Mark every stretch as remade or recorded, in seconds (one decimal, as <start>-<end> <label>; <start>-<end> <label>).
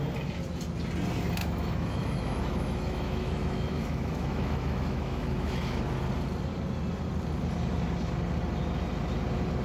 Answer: 0.0-1.4 recorded; 1.4-5.8 remade; 5.8-9.6 recorded